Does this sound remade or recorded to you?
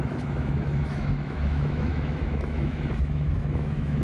remade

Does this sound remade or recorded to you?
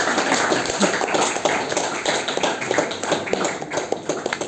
recorded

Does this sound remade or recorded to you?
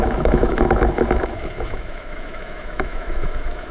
remade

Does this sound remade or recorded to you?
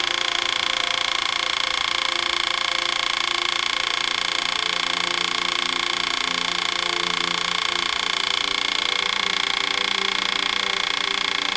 recorded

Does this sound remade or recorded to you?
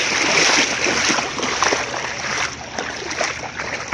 recorded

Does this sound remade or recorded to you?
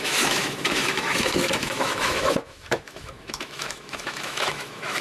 remade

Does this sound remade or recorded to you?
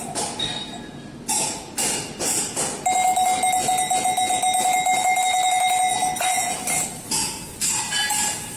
recorded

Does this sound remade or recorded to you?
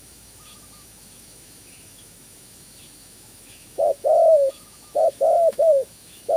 remade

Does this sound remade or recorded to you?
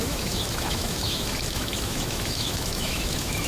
remade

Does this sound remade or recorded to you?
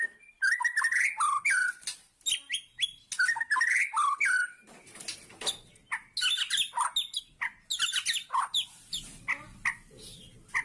recorded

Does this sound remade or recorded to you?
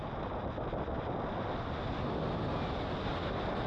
recorded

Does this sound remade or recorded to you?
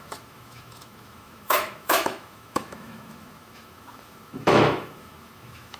remade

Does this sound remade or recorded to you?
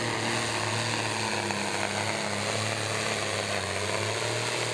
recorded